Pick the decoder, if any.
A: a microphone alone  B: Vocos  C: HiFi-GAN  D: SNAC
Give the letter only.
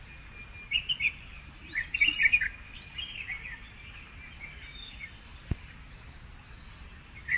A